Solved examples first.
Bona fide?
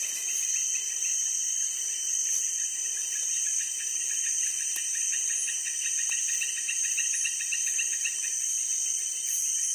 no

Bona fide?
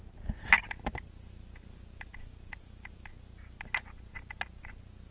yes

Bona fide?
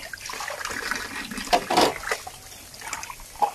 yes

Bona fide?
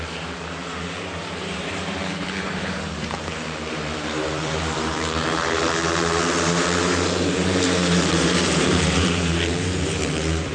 no